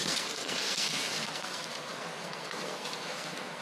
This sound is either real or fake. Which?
fake